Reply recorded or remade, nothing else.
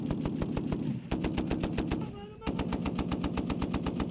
recorded